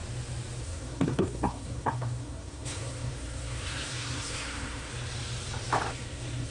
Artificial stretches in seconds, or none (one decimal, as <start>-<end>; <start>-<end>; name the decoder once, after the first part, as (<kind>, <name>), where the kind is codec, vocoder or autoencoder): 0.6-4.9 (codec, SNAC); 5.9-6.5